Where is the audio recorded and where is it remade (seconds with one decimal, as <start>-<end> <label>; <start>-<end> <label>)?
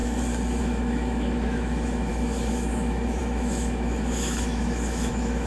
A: 0.0-0.6 recorded; 0.6-5.5 remade